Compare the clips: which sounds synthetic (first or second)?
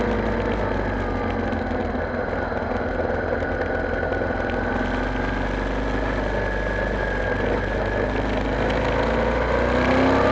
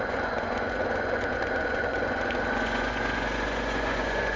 second